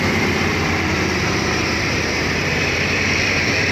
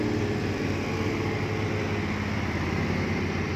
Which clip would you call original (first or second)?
second